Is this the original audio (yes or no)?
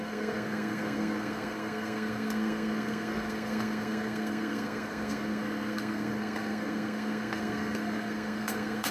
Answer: no